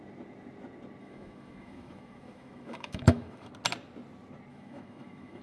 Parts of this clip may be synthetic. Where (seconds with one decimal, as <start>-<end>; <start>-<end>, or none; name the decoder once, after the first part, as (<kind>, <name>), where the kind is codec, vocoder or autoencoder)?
1.0-3.5 (autoencoder, DAC-VAE); 4.5-5.4